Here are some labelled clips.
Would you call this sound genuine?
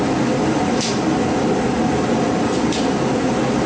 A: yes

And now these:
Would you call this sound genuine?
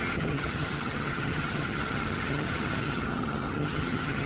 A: no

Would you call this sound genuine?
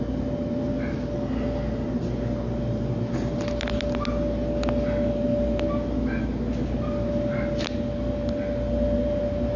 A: yes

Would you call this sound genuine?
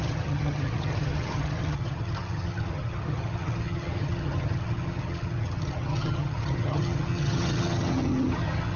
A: no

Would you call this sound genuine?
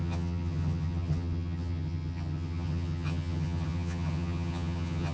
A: no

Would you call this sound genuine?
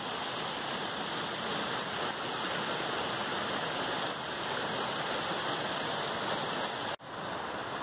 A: yes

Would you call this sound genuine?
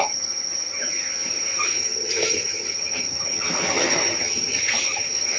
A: no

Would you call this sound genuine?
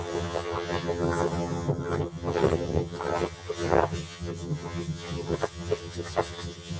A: no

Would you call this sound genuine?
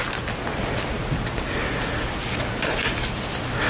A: yes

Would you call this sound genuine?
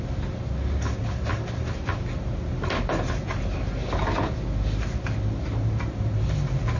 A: yes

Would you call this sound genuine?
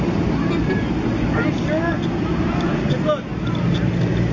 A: yes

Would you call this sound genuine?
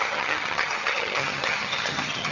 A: no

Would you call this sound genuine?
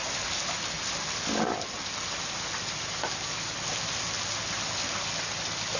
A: yes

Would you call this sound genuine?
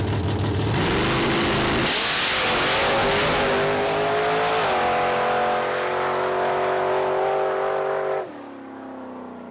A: yes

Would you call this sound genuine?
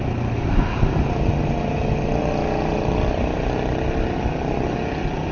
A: yes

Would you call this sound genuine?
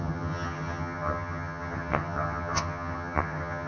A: no